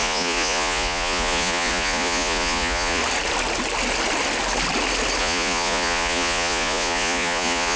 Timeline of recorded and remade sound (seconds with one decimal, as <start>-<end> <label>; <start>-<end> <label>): 0.0-3.0 remade; 3.0-5.2 recorded; 5.2-7.8 remade